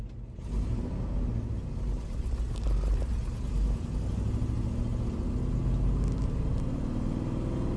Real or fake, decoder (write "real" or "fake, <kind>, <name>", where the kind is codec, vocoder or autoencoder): real